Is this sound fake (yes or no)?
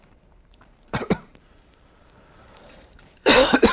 yes